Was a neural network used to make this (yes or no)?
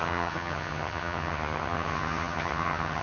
yes